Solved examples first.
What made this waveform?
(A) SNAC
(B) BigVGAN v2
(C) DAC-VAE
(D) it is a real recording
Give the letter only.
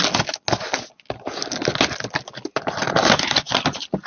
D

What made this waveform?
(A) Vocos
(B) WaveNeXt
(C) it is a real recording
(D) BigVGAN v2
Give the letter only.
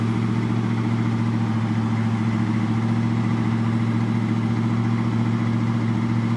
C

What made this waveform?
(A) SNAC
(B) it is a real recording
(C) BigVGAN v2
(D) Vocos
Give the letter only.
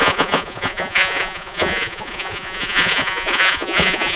D